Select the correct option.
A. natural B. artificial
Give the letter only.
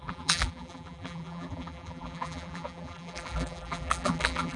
B